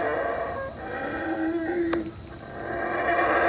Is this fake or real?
real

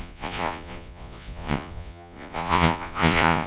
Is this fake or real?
fake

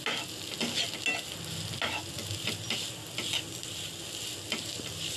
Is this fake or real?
real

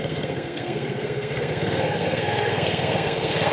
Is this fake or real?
fake